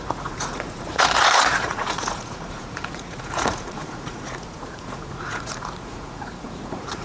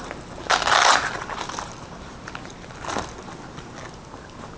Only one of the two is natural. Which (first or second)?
second